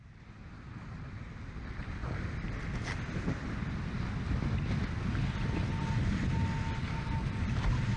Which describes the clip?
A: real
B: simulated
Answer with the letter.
A